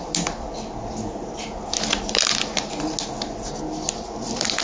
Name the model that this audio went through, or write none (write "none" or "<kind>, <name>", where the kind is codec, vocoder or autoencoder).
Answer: none